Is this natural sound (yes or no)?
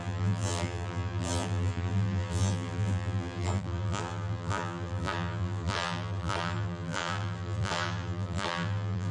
no